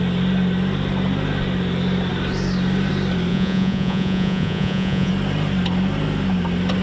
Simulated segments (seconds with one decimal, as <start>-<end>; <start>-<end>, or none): 3.3-5.1